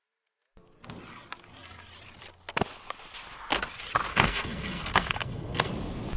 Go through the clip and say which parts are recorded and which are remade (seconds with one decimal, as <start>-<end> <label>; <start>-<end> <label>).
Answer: 0.0-4.1 recorded; 4.1-5.7 remade; 5.7-6.2 recorded